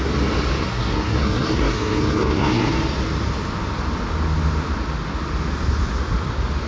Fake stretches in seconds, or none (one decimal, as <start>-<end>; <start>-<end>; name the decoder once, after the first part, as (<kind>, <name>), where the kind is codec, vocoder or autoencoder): 0.6-2.7 (codec, SNAC)

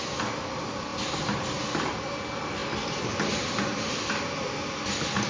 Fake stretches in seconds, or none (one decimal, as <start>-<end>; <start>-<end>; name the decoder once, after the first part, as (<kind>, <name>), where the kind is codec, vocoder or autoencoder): none

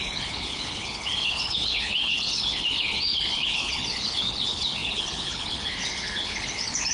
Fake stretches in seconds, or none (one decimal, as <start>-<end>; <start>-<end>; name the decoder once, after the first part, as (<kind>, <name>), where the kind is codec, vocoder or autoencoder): 0.0-6.9 (codec, HILCodec)